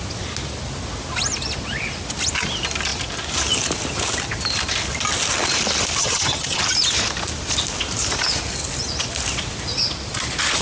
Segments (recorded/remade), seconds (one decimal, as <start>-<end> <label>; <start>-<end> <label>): 0.0-6.0 recorded; 6.0-6.6 remade; 6.6-10.6 recorded